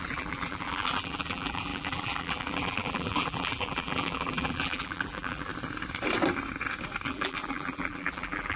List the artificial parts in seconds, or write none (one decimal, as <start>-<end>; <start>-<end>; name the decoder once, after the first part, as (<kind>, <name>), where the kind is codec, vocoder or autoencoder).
0.0-5.5 (vocoder, BigVGAN v2); 7.1-8.6